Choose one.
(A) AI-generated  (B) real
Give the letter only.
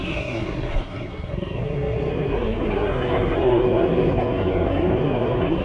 A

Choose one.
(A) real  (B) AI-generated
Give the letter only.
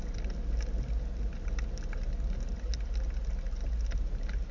A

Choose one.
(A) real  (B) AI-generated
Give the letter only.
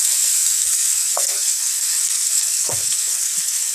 B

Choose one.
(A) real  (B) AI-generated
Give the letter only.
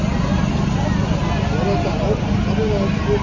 A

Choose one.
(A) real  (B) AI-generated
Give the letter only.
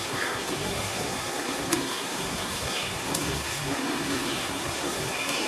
B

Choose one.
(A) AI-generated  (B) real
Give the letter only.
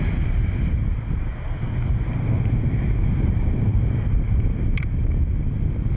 B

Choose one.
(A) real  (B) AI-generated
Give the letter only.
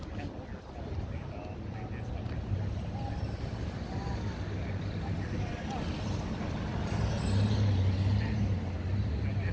A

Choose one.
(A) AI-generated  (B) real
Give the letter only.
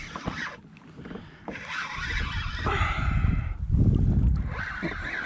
B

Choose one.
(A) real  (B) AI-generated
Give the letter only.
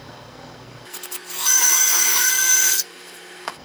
B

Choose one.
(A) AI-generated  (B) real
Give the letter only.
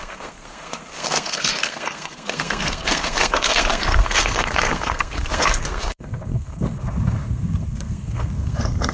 A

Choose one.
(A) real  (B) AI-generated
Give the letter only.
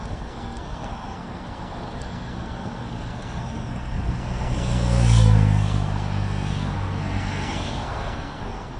B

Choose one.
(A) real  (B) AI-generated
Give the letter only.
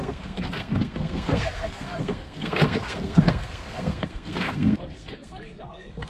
B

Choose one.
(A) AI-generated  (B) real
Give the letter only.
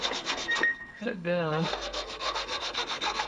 A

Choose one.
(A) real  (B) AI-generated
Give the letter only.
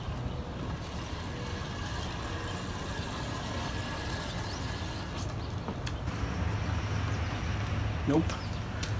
A